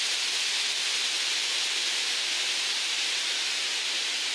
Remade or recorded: recorded